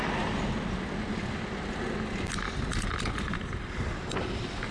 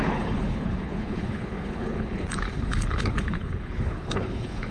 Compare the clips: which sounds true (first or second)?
first